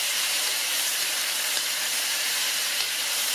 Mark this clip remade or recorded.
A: remade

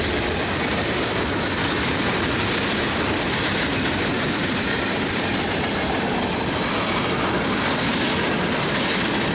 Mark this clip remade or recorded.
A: remade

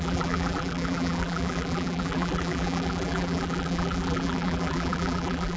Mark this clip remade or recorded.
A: remade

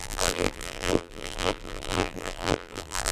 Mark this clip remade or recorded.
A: remade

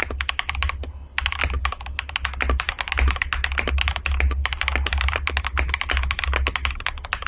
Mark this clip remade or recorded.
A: recorded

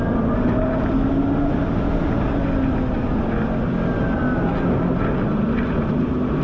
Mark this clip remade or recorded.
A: recorded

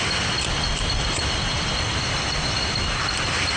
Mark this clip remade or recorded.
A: remade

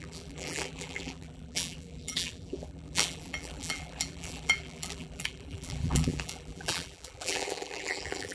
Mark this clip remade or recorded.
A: remade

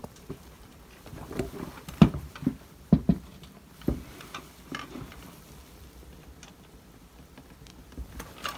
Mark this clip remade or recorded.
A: remade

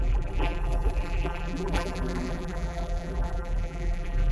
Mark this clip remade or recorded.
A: remade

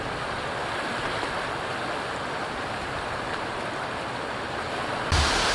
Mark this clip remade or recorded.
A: recorded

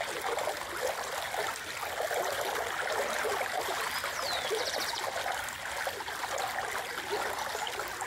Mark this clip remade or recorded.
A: recorded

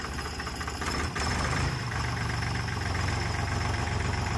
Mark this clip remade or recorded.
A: remade